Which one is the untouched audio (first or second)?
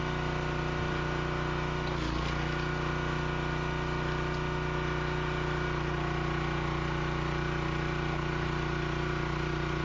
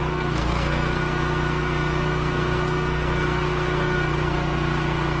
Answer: first